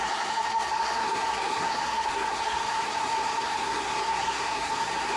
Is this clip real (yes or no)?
no